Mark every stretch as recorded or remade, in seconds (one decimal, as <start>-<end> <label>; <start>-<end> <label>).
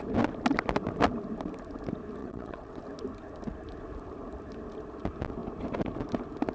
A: 0.0-2.2 recorded; 2.2-2.8 remade; 2.8-6.5 recorded